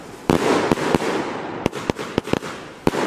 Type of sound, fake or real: real